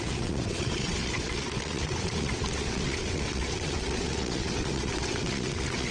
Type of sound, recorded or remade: remade